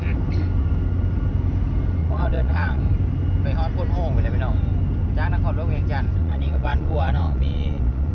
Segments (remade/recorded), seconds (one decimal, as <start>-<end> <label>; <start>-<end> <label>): 0.0-2.0 recorded; 2.0-2.8 remade; 2.8-6.2 recorded; 6.2-8.1 remade